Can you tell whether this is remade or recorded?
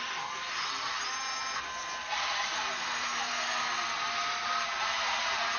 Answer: recorded